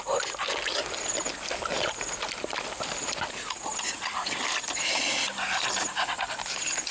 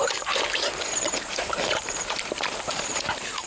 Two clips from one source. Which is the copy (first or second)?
second